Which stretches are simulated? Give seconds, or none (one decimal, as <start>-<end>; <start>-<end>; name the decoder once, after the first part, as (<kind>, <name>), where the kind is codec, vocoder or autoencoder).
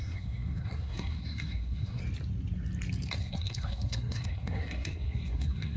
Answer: 0.0-2.0 (codec, SNAC); 3.2-5.8